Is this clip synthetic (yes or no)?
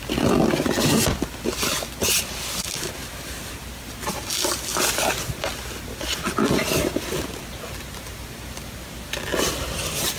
no